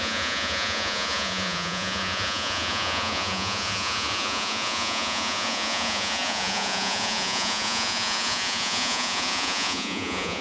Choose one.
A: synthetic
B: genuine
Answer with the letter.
A